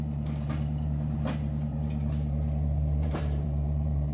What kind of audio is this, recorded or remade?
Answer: remade